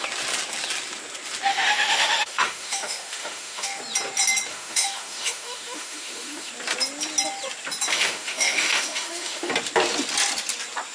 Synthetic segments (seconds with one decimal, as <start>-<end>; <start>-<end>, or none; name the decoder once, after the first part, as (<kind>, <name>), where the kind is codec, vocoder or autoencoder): 1.5-3.8 (autoencoder, DAC-VAE); 4.5-6.5; 7.9-9.5